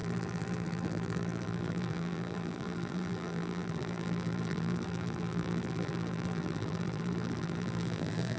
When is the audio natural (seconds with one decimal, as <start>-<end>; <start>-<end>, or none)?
none

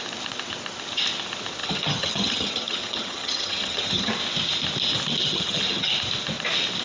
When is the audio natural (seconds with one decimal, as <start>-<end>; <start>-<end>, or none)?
0.0-1.6; 4.1-5.2; 5.9-6.8